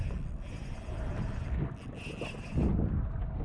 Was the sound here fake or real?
real